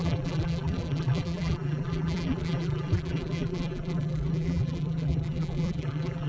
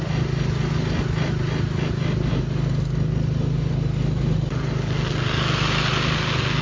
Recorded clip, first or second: second